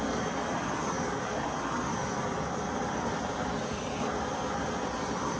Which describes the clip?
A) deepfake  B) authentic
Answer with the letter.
B